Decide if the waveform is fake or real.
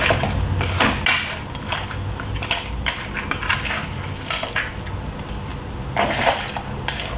real